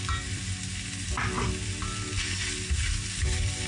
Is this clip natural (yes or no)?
yes